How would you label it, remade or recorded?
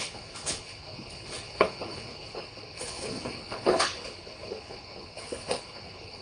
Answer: remade